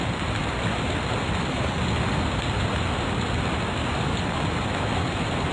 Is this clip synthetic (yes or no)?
no